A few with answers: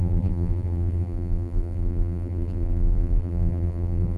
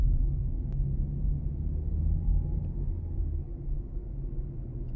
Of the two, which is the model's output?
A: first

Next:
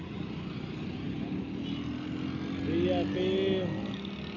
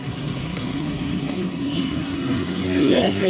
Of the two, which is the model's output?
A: second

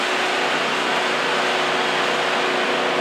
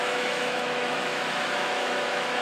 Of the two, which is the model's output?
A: second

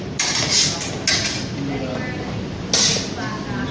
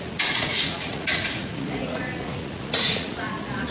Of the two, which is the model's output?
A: second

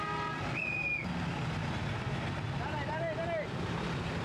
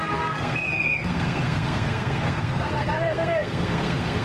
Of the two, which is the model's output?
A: second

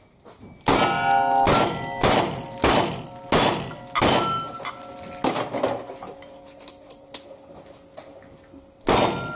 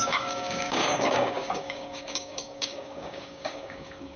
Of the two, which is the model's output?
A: second